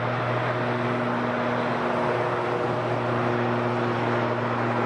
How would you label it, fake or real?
real